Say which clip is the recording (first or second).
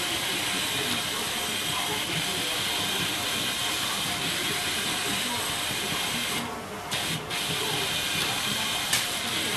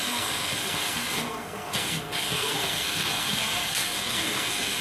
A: first